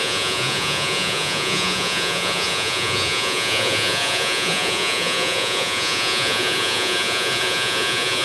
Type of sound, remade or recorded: remade